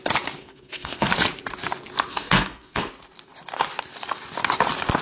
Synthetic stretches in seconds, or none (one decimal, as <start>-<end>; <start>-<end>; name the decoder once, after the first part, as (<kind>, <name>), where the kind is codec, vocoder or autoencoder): 0.4-1.1 (codec, SNAC); 2.1-2.9

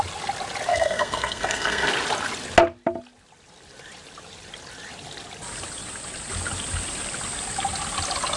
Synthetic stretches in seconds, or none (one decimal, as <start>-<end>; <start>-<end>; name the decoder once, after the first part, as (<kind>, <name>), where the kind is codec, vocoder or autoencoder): 0.7-1.9 (codec, SNAC)